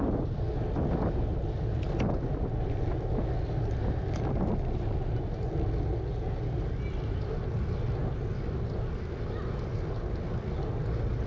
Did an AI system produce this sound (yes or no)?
no